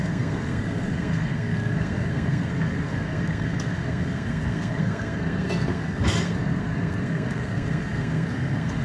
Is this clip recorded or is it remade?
remade